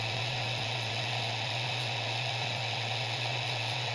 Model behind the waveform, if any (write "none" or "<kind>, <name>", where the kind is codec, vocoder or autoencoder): vocoder, WaveNeXt